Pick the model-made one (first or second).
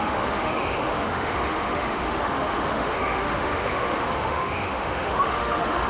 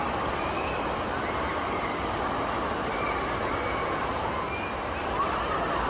first